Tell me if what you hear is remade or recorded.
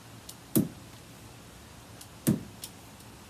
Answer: recorded